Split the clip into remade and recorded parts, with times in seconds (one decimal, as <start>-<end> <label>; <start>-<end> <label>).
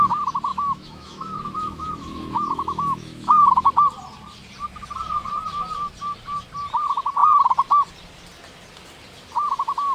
0.0-0.5 recorded; 0.5-3.7 remade; 3.7-9.9 recorded